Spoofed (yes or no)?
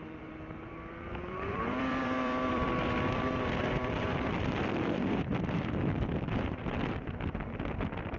yes